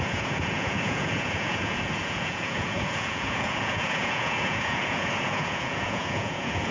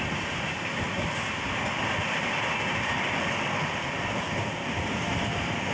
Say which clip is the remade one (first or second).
first